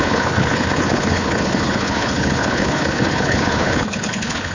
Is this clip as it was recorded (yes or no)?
no